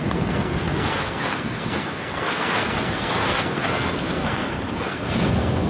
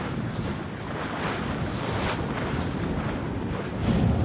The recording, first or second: second